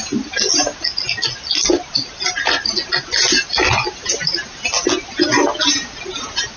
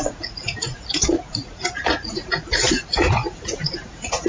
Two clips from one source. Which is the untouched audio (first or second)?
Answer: first